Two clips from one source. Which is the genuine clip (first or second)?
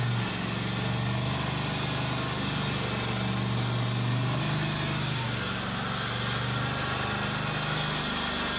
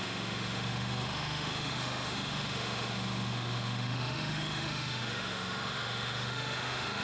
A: first